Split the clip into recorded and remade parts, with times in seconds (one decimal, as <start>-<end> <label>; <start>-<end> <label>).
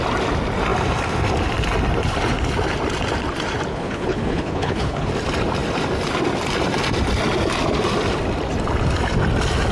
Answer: 0.0-3.7 recorded; 3.7-5.1 remade; 5.1-9.7 recorded